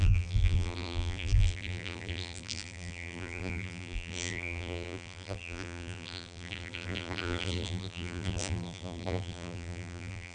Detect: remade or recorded remade